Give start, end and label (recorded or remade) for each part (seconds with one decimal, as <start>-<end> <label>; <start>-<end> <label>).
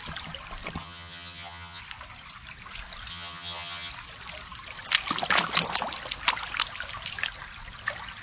0.0-0.8 recorded; 0.8-1.8 remade; 1.8-3.1 recorded; 3.1-3.9 remade; 3.9-8.2 recorded